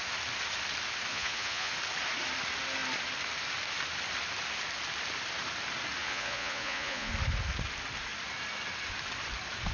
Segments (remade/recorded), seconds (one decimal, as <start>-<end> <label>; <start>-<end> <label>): 0.0-1.1 recorded; 1.1-1.7 remade; 1.7-6.0 recorded; 6.0-7.1 remade; 7.1-9.7 recorded